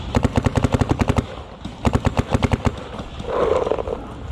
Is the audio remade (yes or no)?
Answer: no